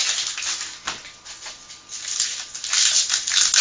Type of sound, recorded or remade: recorded